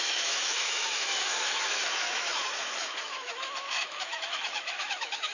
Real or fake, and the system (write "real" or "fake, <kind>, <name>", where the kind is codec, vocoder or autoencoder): fake, autoencoder, DAC-VAE